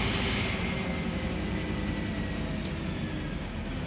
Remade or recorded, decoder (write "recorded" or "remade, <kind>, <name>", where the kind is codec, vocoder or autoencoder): recorded